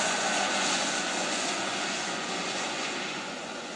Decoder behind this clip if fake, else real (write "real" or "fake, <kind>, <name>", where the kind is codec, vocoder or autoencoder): fake, vocoder, Vocos